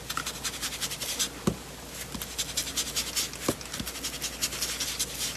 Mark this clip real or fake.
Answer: real